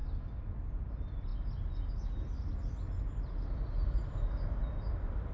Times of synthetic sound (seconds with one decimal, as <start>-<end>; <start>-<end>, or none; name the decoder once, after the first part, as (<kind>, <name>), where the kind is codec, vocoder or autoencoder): none